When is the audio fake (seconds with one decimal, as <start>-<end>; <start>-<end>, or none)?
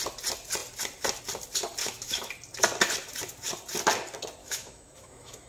1.8-2.3; 4.4-5.5